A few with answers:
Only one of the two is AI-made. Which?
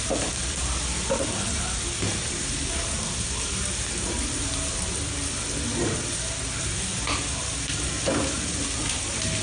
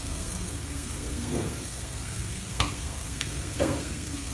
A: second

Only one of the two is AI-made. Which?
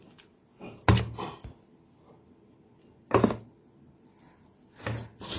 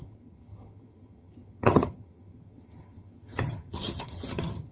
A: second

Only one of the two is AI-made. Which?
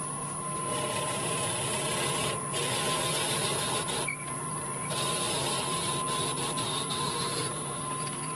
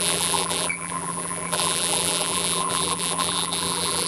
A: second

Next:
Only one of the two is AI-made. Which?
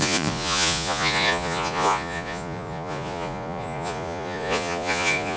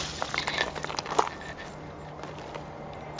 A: first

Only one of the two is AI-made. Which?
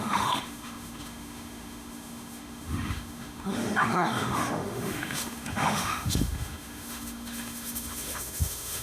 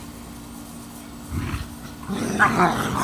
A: first